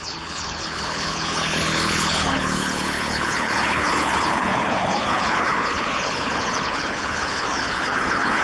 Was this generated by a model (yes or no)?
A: yes